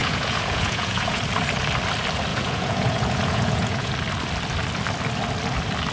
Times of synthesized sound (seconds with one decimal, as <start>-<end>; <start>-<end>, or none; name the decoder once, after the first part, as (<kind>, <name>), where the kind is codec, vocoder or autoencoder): 0.0-1.2 (vocoder, Vocos); 2.3-3.9